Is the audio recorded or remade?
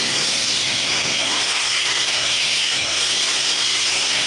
remade